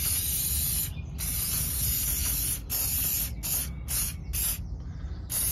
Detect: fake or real real